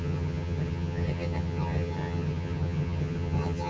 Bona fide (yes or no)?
no